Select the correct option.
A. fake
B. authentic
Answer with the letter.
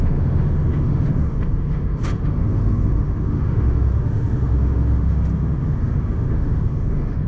A